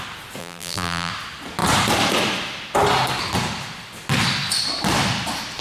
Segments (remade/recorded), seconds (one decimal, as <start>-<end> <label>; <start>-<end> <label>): 0.0-0.4 recorded; 0.4-1.1 remade; 1.1-5.6 recorded